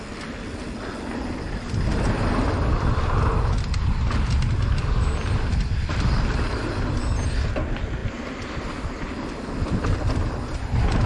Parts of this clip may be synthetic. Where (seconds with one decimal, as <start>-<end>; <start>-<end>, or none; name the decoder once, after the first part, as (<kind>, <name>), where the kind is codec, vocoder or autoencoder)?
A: none